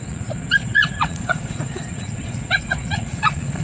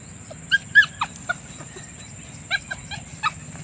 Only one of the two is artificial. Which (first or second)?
first